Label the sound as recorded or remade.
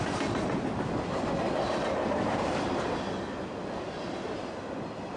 recorded